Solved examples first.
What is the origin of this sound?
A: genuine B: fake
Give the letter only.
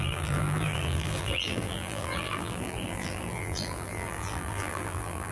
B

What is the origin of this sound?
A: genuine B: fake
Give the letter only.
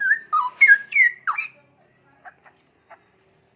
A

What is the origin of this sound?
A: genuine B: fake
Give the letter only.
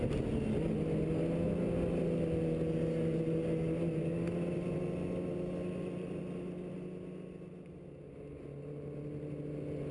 A